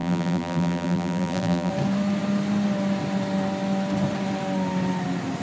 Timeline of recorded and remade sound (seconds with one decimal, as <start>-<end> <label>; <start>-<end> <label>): 0.0-1.7 remade; 1.7-5.4 recorded